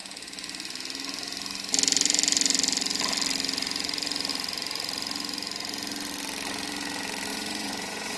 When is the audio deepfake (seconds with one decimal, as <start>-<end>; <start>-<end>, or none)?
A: 7.3-8.2